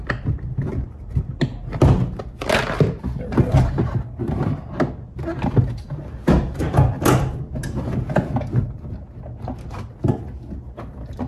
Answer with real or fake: real